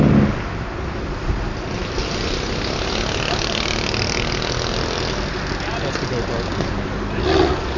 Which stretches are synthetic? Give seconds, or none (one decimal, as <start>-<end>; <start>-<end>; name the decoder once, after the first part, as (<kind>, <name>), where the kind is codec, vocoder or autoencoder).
none